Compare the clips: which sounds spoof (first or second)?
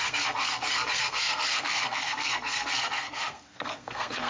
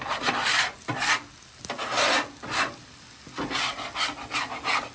first